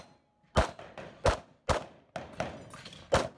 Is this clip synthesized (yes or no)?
no